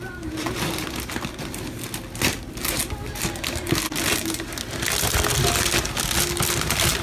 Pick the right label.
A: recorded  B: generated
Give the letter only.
A